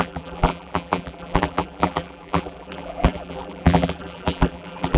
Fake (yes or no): yes